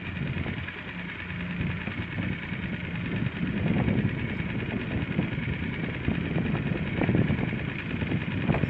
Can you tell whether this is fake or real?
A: real